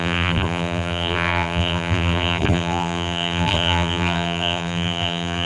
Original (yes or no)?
no